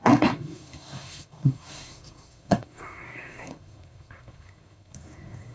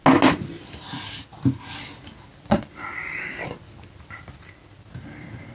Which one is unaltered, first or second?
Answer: second